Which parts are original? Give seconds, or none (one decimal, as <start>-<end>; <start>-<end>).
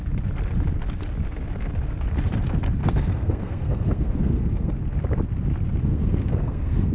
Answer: 0.0-2.8; 4.7-5.9